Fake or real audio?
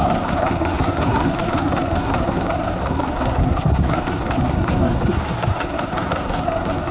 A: fake